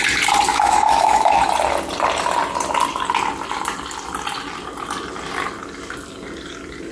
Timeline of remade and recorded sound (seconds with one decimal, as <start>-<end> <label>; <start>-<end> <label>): 0.0-0.5 recorded; 0.5-1.5 remade; 1.5-6.9 recorded